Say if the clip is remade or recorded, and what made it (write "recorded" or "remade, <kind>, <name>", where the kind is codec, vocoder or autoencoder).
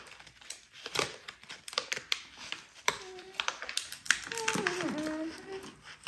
recorded